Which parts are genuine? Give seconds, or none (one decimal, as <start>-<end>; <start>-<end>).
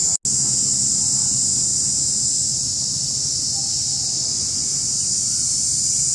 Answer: 0.0-6.1